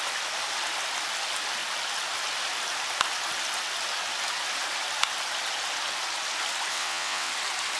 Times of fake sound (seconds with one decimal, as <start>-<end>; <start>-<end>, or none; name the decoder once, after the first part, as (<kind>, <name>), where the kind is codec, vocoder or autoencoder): 6.7-7.3 (vocoder, WaveNeXt)